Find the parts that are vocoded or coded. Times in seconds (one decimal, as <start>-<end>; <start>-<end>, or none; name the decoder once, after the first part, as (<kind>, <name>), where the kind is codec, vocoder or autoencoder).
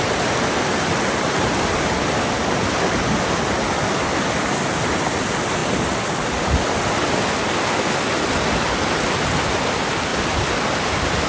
none